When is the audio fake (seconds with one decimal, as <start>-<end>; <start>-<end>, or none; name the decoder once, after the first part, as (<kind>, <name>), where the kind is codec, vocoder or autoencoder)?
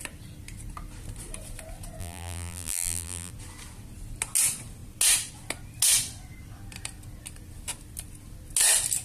2.0-3.3 (vocoder, BigVGAN v2)